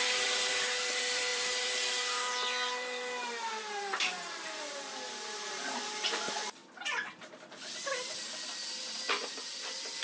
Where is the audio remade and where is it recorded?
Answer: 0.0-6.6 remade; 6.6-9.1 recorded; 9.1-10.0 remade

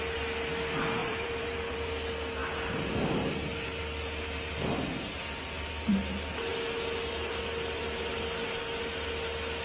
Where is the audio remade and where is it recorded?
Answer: 0.0-1.0 recorded; 1.0-1.9 remade; 1.9-9.6 recorded

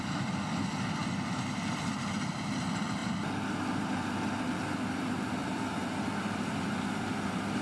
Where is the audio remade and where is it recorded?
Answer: 0.0-1.0 remade; 1.0-1.9 recorded; 1.9-3.0 remade; 3.0-3.6 recorded; 3.6-7.6 remade

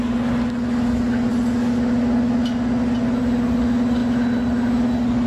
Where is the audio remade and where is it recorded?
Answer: 0.0-5.3 recorded

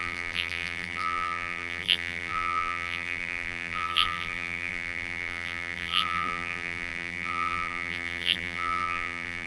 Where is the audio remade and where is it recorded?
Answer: 0.0-9.5 remade

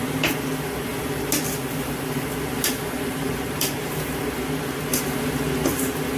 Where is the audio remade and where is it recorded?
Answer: 0.0-0.9 recorded; 0.9-4.2 remade; 4.2-4.9 recorded; 4.9-5.5 remade; 5.5-6.2 recorded

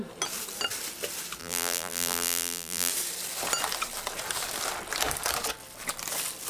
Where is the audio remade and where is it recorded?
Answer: 0.0-1.4 recorded; 1.4-2.9 remade; 2.9-6.5 recorded